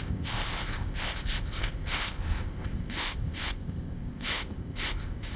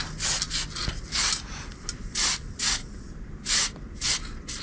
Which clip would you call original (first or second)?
second